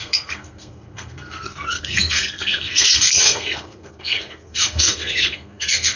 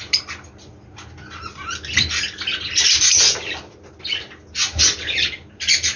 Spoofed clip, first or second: first